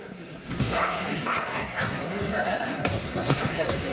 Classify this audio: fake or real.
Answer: fake